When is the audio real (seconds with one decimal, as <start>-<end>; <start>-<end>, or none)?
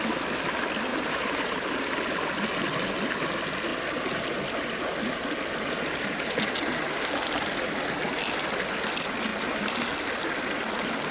0.0-0.9; 1.7-11.1